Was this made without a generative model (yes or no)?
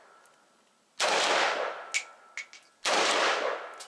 yes